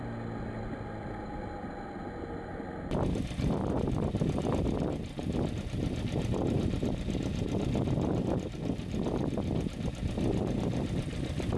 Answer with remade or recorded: recorded